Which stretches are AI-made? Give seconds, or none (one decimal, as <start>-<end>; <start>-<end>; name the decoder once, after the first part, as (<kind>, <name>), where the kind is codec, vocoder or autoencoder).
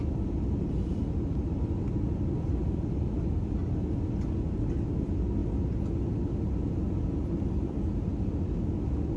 none